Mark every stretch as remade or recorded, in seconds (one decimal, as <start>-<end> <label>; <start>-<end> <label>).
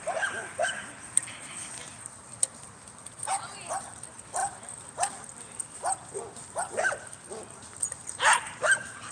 0.0-9.1 recorded